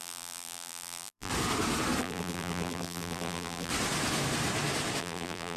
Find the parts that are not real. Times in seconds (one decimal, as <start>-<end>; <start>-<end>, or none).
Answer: 0.0-1.3; 2.0-3.7; 5.0-5.6